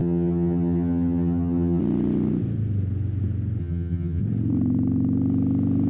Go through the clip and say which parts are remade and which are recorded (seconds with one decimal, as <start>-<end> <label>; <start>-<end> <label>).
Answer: 0.0-1.8 remade; 1.8-3.6 recorded; 3.6-4.2 remade; 4.2-5.9 recorded